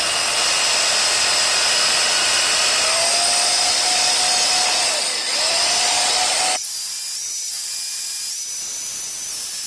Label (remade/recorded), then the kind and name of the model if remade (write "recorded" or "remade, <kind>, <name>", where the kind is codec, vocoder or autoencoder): recorded